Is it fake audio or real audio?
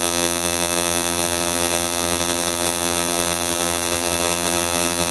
fake